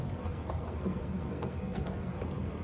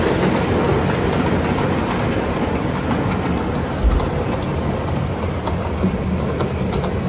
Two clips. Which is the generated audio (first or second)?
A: first